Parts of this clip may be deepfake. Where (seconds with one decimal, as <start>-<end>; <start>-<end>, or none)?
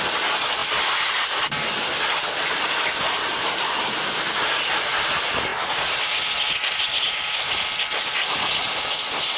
none